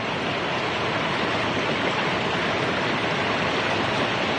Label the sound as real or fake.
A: real